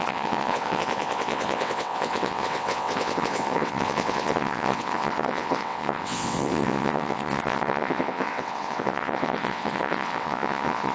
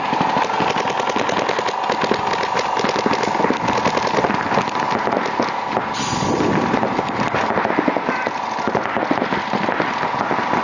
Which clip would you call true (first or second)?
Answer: second